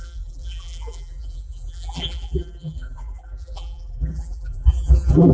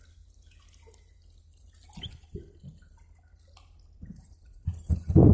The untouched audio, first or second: second